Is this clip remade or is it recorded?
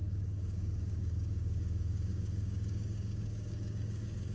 remade